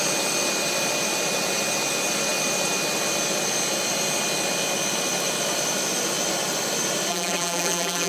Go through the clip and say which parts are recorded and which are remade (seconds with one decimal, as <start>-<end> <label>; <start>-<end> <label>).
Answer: 0.0-7.1 recorded; 7.1-8.1 remade